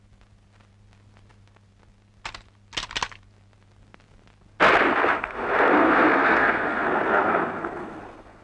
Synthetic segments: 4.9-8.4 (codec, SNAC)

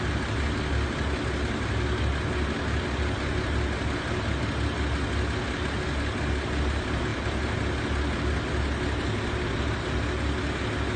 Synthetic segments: none

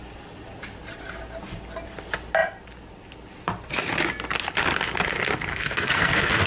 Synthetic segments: 5.5-6.5 (codec, SNAC)

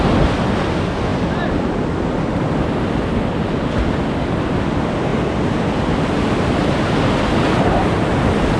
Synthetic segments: none

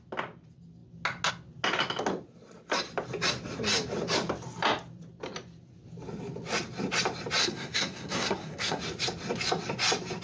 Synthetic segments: 7.4-8.8 (codec, SNAC)